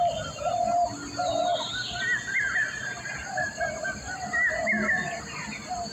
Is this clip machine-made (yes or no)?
no